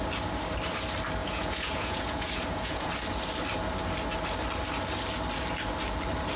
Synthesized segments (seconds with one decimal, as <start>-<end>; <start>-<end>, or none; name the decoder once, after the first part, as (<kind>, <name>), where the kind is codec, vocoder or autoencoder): 1.2-2.9 (vocoder, Vocos)